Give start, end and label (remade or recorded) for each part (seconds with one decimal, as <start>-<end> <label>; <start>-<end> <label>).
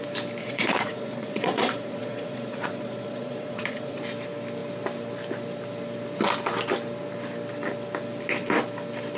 0.0-0.4 recorded; 0.4-4.0 remade; 4.0-9.2 recorded